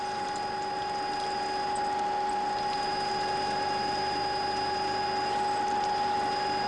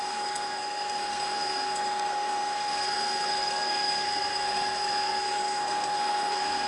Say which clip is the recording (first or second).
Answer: first